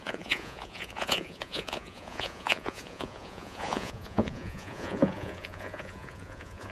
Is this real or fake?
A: fake